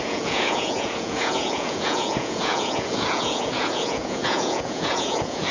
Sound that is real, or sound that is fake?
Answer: fake